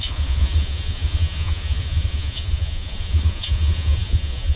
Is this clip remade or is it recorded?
remade